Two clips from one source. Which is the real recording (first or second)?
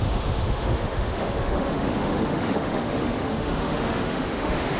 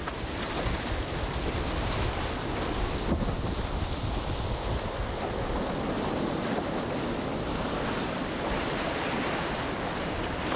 second